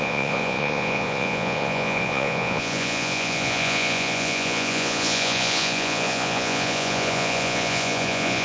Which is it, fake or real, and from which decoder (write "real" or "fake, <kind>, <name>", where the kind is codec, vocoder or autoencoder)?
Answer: fake, vocoder, Vocos